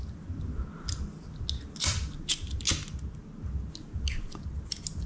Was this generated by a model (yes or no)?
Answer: no